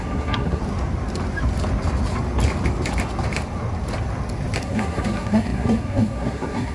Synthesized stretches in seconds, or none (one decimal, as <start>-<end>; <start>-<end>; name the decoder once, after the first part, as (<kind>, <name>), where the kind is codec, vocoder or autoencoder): 0.0-0.6 (codec, SNAC); 4.6-6.7